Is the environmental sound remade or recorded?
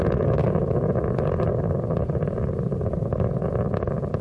recorded